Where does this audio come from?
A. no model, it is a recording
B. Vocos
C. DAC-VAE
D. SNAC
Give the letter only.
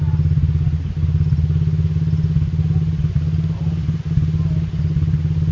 A